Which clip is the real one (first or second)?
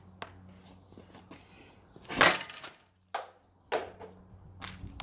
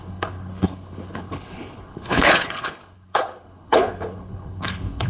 first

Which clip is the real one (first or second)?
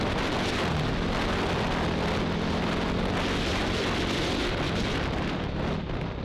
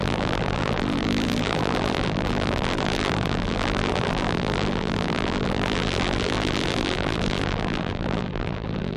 first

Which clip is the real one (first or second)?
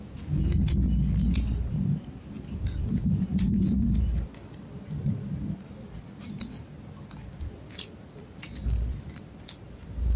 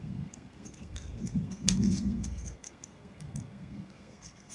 first